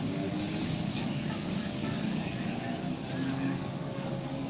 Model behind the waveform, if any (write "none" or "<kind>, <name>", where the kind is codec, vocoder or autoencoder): codec, DAC